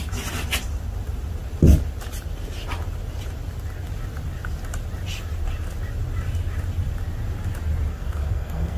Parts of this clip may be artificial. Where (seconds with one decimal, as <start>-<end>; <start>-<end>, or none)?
7.9-8.8